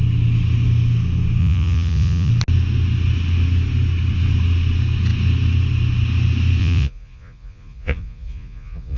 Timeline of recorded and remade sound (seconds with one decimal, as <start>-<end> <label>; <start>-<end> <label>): 0.0-1.4 recorded; 1.4-2.3 remade; 2.3-6.6 recorded; 6.6-9.0 remade